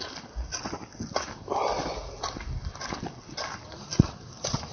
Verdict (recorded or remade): recorded